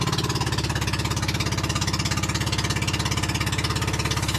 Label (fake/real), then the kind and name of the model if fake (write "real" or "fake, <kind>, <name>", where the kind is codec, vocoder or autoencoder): real